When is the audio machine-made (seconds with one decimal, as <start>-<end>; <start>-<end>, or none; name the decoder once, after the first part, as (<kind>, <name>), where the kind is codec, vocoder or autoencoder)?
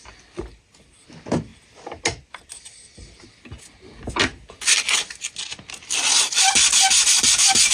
none